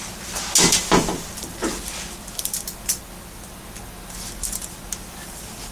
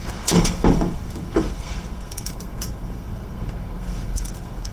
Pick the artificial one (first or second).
second